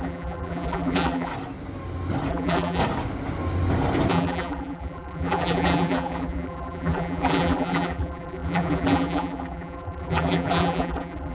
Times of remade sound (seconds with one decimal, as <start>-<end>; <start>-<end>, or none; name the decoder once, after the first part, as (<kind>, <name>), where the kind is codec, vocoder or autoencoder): 0.0-1.3 (vocoder, BigVGAN v2); 2.3-2.8; 4.1-11.3